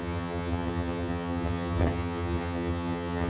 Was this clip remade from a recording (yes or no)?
yes